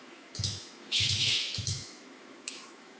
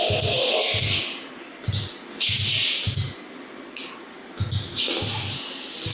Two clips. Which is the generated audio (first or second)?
first